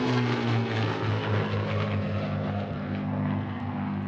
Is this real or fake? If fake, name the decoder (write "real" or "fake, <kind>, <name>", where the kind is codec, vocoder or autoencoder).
fake, codec, SNAC